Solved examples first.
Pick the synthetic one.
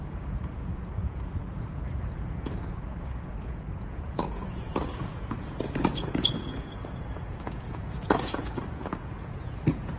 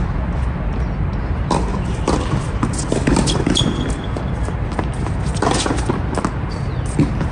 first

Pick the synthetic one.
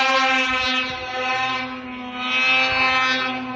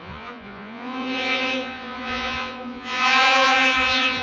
second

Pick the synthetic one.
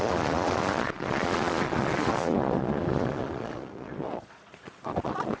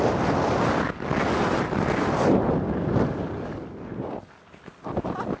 first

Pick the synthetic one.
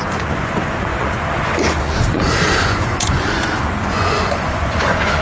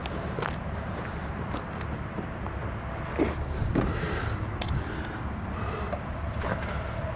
first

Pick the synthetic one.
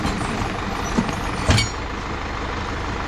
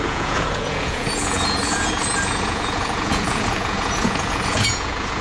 second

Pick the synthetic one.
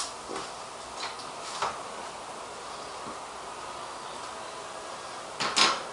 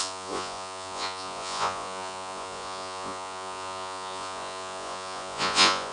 second